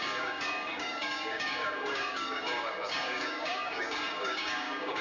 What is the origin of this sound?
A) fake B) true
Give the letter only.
A